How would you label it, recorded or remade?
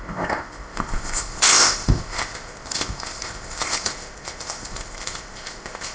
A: remade